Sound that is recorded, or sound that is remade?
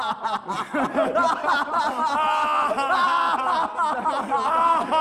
recorded